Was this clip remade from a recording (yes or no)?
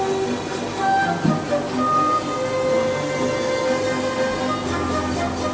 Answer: no